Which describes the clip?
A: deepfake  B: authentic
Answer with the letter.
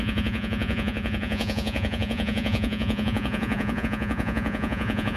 A